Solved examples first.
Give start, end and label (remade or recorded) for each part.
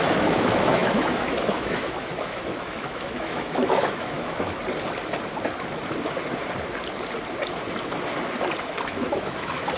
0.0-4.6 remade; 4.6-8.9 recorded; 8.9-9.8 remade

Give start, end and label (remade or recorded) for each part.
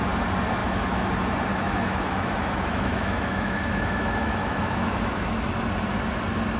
0.0-0.6 recorded; 0.6-1.1 remade; 1.1-1.5 recorded; 1.5-5.5 remade; 5.5-6.6 recorded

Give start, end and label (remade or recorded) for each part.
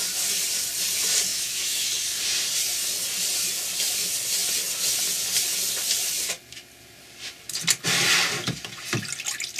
0.0-1.3 recorded; 1.3-1.9 remade; 1.9-9.6 recorded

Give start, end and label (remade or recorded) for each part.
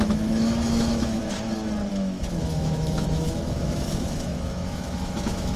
0.0-1.2 remade; 1.2-1.9 recorded; 1.9-5.6 remade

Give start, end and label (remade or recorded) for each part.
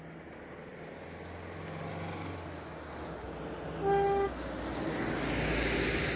0.0-6.2 recorded